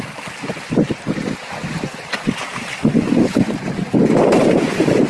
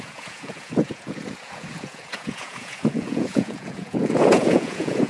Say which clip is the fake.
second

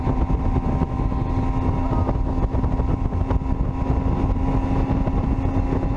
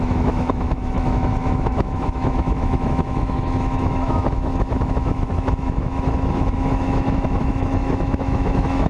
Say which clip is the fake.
second